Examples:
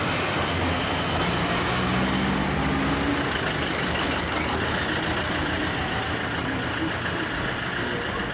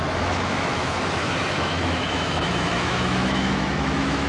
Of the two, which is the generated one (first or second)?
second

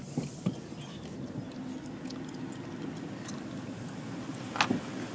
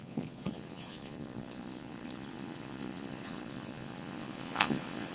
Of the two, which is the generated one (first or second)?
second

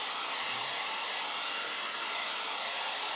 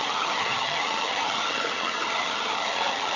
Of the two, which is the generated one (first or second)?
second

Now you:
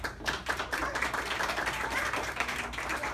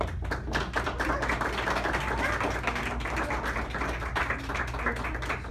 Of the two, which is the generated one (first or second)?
first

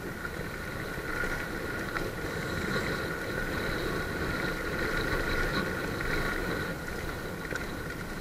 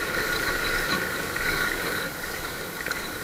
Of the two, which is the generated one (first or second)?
second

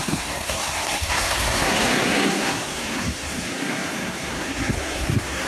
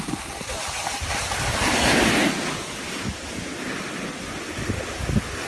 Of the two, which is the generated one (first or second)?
first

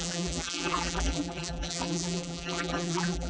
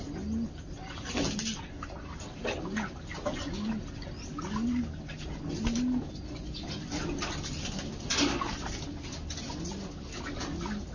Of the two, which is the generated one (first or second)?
first